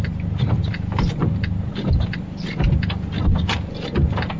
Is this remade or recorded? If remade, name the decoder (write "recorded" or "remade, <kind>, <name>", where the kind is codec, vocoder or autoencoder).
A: recorded